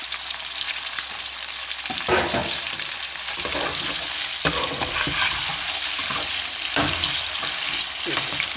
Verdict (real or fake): real